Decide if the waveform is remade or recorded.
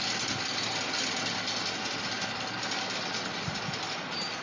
recorded